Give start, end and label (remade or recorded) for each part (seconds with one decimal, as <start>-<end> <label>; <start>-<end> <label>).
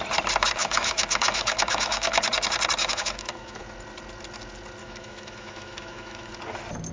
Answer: 0.0-0.6 recorded; 0.6-2.2 remade; 2.2-2.8 recorded; 2.8-3.6 remade; 3.6-4.8 recorded; 4.8-6.3 remade; 6.3-6.9 recorded